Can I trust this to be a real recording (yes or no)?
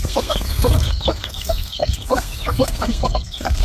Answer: no